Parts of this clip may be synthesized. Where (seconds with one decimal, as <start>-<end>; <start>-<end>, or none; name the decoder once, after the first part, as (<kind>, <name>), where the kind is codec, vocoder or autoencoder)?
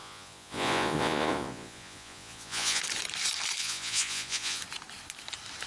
0.0-2.8 (vocoder, Vocos); 3.6-4.6